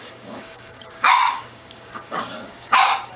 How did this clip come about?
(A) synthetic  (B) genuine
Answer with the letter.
A